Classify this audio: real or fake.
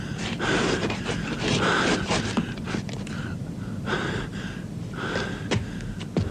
real